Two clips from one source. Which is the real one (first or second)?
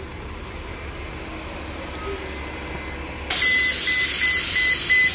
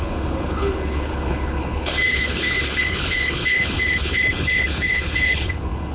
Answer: first